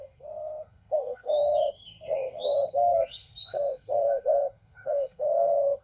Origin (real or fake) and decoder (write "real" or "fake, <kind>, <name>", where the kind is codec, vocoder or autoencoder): fake, codec, SNAC